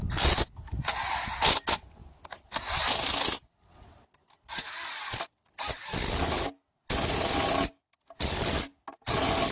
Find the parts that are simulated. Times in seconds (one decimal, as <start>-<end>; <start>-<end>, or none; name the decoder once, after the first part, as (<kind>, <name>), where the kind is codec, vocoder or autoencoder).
none